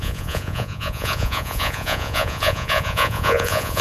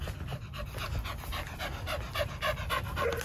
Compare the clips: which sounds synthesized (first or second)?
first